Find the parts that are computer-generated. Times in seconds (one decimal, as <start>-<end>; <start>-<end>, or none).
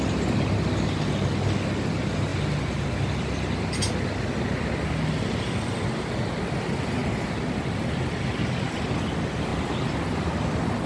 none